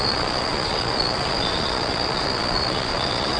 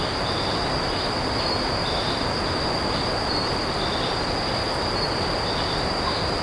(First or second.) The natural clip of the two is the second